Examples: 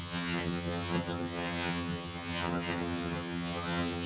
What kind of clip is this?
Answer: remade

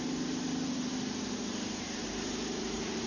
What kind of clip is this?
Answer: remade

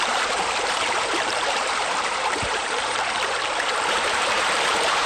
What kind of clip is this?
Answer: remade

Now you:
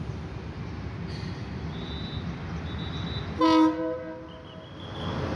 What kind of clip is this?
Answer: recorded